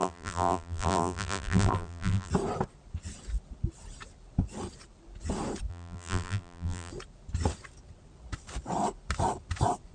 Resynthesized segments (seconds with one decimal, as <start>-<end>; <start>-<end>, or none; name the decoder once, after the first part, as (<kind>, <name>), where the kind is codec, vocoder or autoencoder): 0.0-2.3 (vocoder, BigVGAN v2); 5.7-6.9